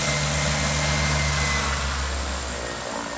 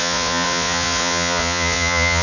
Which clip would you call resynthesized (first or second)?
second